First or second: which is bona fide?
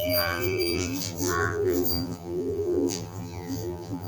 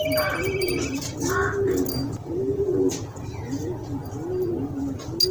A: second